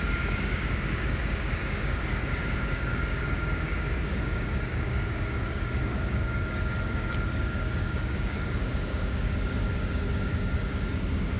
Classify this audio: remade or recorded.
remade